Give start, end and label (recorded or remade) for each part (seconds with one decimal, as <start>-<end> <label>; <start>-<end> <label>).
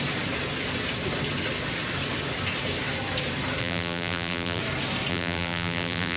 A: 0.0-3.6 recorded; 3.6-4.6 remade; 4.6-5.1 recorded; 5.1-6.2 remade